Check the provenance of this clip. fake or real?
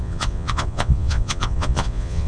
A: fake